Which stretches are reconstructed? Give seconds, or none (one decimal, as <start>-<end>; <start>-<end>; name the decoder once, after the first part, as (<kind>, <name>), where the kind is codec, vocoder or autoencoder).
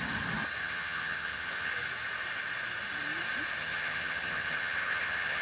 0.6-1.7 (vocoder, HiFi-GAN); 3.6-5.4